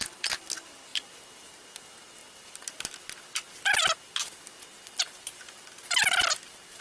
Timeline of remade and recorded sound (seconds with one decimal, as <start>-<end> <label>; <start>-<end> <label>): 0.0-6.8 recorded